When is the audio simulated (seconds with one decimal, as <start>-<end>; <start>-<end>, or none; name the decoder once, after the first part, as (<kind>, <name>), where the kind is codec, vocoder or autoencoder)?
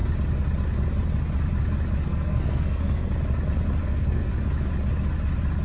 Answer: 2.1-3.1 (codec, SNAC); 3.8-4.3